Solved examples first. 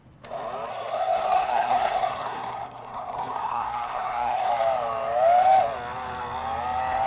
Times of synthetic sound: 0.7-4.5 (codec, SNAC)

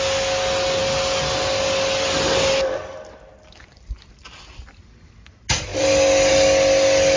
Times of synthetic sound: none

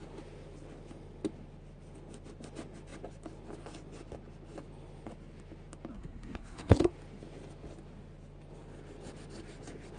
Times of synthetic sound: 5.9-6.9 (codec, SNAC)

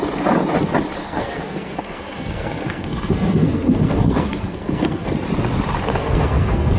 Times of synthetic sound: 1.0-5.1 (codec, SNAC); 5.9-6.8

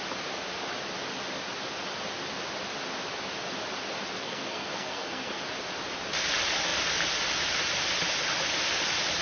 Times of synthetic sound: 4.2-5.4 (codec, SNAC)

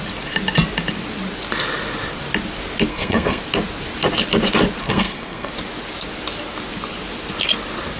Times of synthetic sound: 2.9-3.4 (codec, SNAC); 4.8-5.5

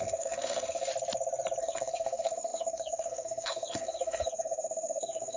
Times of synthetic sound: 0.0-0.9 (codec, SNAC); 1.6-5.4